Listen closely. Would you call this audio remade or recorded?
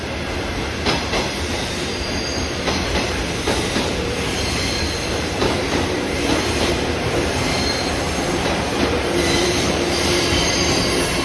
remade